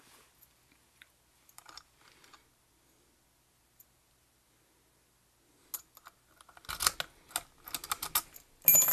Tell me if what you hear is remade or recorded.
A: recorded